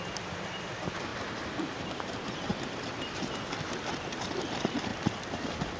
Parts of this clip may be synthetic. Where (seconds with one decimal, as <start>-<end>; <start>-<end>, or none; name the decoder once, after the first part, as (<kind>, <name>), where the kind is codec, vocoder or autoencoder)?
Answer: none